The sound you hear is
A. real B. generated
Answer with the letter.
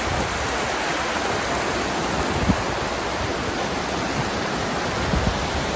A